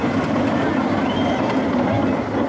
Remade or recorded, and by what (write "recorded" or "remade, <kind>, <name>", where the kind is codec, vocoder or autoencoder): recorded